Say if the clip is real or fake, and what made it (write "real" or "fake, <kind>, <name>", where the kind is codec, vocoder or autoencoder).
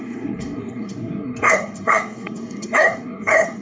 fake, codec, SNAC